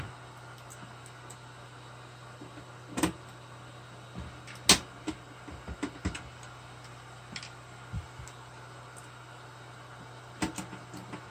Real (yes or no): yes